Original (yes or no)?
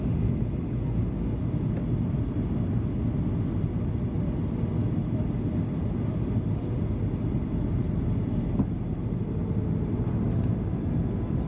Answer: yes